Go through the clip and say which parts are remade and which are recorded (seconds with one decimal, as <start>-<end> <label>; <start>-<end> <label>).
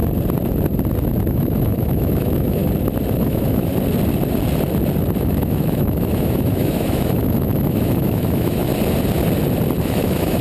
0.0-1.3 recorded; 1.3-2.6 remade; 2.6-3.1 recorded; 3.1-3.7 remade; 3.7-5.2 recorded; 5.2-8.7 remade; 8.7-9.8 recorded; 9.8-10.4 remade